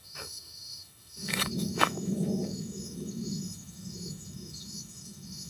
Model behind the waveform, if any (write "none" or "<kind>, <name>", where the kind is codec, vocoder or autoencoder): autoencoder, DAC-VAE